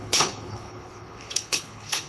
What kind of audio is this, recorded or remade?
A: remade